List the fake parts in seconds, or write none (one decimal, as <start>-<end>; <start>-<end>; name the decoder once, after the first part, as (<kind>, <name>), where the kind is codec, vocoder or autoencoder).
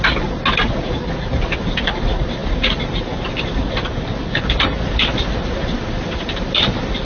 2.4-6.4 (vocoder, BigVGAN v2)